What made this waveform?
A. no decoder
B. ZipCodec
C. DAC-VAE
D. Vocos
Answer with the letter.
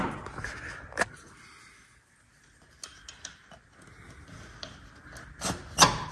A